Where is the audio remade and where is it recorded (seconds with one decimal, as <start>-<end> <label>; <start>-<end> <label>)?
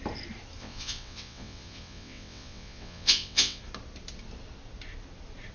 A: 0.0-0.6 recorded; 0.6-3.6 remade; 3.6-5.5 recorded